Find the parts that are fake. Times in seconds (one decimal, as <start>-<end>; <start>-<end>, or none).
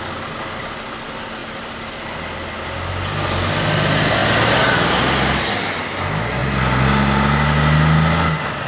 none